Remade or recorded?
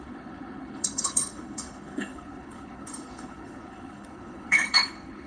remade